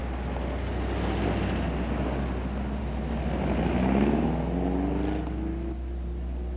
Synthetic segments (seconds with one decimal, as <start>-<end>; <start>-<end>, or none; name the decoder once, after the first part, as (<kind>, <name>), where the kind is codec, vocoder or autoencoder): none